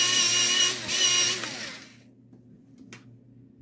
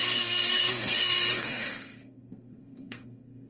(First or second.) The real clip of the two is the first